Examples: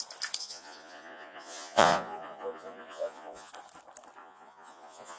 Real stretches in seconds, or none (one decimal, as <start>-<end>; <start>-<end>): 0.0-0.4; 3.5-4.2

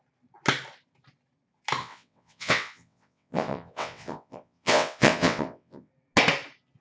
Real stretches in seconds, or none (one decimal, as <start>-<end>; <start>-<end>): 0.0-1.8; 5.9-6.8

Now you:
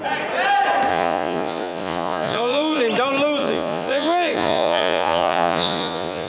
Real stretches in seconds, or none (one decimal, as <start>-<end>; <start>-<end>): 0.0-0.9; 2.8-3.4

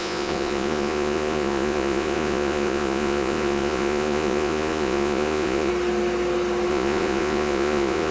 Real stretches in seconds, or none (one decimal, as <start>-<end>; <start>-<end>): 5.7-6.7

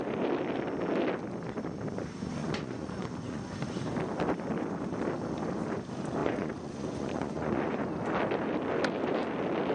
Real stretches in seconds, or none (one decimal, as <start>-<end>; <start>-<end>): 0.0-2.4; 3.4-6.2; 7.8-9.7